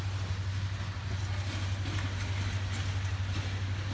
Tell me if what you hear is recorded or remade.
recorded